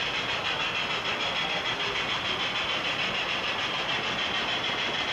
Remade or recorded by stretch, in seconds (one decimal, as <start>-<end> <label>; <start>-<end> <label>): 0.0-0.4 remade; 0.4-2.6 recorded; 2.6-5.1 remade